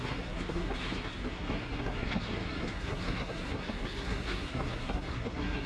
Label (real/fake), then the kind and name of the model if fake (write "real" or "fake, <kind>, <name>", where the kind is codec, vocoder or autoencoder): fake, codec, SNAC